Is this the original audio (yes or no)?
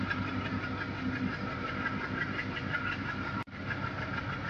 yes